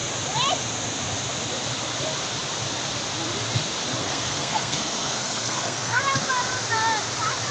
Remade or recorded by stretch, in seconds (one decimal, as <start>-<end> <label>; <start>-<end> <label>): 0.0-4.0 recorded; 4.0-6.0 remade; 6.0-7.5 recorded